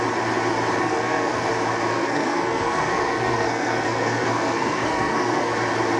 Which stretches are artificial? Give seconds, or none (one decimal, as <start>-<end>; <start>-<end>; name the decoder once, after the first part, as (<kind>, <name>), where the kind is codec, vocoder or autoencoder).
0.8-1.5 (codec, SNAC); 1.9-5.5